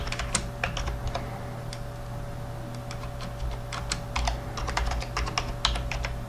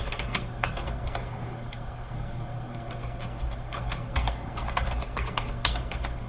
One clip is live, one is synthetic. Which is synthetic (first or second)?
second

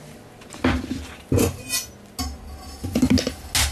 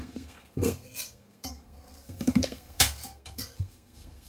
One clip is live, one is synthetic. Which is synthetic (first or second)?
second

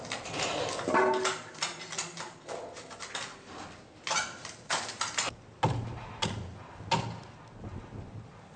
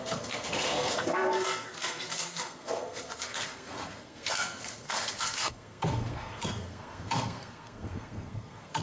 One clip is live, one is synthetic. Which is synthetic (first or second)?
second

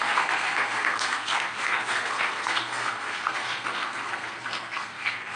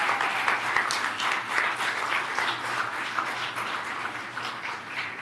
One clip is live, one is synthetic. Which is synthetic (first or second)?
first